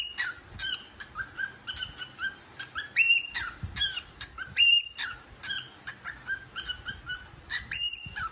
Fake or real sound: real